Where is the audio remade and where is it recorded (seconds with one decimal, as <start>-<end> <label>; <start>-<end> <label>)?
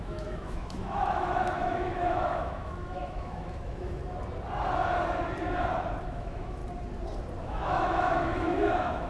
0.0-4.0 remade; 4.0-6.0 recorded; 6.0-6.6 remade; 6.6-7.4 recorded; 7.4-9.1 remade